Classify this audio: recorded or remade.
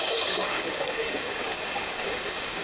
remade